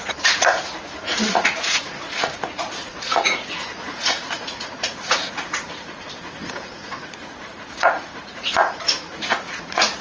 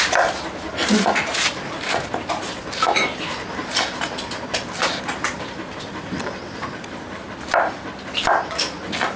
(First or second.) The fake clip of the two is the first